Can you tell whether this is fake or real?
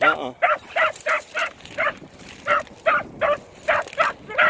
real